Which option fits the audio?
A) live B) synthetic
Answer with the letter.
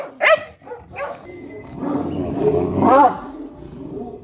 A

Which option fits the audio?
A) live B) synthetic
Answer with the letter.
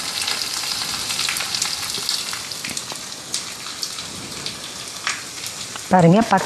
B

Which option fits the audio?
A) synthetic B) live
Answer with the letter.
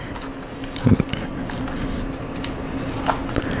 B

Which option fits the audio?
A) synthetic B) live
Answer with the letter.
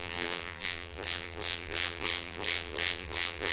A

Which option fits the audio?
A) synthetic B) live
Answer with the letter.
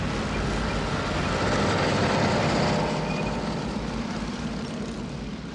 B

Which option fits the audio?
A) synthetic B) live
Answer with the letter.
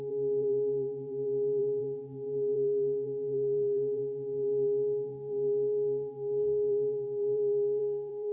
A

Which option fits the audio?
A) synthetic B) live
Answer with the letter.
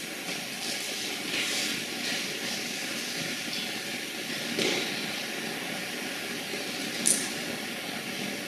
B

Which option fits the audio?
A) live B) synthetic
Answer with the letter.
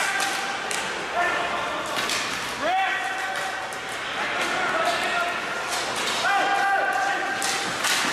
A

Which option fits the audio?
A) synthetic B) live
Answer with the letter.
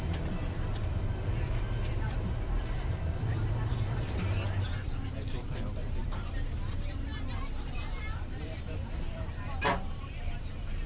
A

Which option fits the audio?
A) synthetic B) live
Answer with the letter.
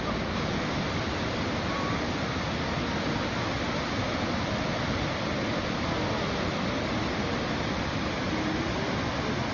B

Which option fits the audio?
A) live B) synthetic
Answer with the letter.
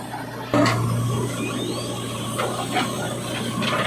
A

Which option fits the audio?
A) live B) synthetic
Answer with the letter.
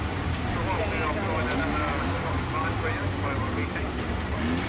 A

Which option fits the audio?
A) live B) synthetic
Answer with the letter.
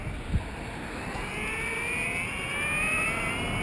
A